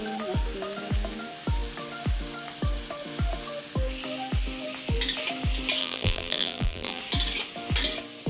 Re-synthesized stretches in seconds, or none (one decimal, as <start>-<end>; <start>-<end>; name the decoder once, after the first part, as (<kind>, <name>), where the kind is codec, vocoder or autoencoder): 5.8-7.0 (vocoder, BigVGAN v2)

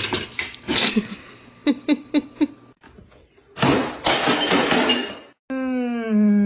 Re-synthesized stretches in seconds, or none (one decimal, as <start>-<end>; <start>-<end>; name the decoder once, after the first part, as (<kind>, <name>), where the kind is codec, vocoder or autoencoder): none

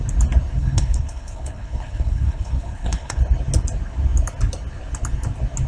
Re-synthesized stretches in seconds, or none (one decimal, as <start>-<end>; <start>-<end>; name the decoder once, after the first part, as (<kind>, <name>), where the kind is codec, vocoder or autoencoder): 0.6-3.2 (codec, HILCodec)

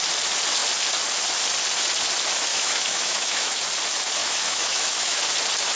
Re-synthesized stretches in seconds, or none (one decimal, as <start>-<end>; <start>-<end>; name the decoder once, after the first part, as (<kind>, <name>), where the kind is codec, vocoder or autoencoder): 2.5-3.6 (autoencoder, DAC-VAE); 4.2-5.2

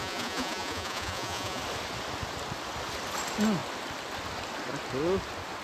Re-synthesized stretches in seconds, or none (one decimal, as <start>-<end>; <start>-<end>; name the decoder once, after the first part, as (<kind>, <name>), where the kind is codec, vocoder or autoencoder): 0.0-1.6 (vocoder, Vocos)